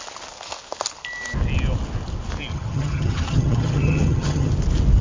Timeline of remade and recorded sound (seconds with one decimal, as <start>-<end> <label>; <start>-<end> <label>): 0.0-2.5 recorded; 2.5-4.5 remade; 4.5-5.0 recorded